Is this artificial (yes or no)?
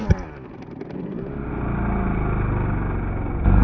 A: no